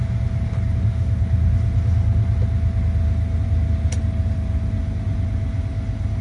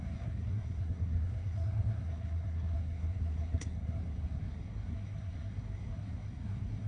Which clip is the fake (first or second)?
second